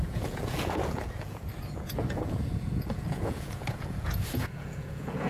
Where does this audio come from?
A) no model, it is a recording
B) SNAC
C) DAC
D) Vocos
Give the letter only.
D